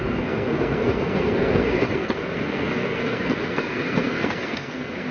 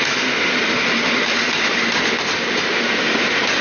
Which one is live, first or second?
second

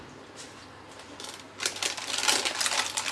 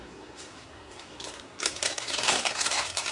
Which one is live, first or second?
first